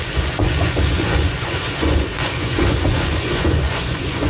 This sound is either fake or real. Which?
fake